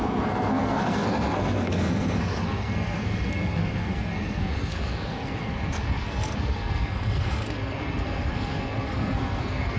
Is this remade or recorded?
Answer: remade